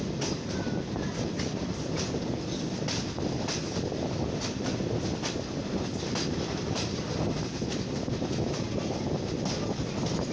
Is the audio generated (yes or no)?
no